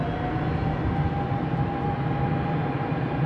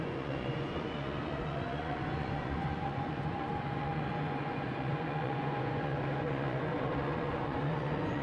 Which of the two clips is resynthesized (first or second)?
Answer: second